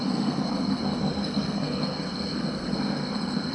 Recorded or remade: remade